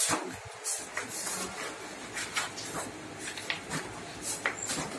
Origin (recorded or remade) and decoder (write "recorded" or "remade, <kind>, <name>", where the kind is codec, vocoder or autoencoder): recorded